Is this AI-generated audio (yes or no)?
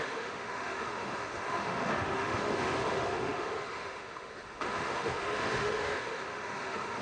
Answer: yes